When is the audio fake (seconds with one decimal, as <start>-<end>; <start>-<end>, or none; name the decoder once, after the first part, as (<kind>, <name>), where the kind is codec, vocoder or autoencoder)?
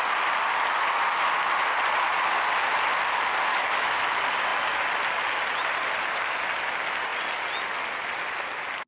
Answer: 3.5-4.0 (autoencoder, DAC-VAE)